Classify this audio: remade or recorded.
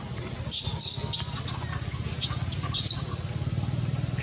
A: recorded